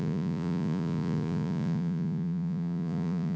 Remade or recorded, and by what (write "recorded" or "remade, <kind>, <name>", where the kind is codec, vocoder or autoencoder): remade, vocoder, Vocos